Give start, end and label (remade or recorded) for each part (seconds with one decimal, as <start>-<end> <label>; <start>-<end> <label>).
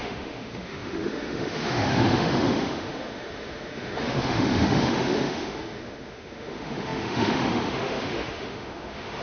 0.0-9.2 remade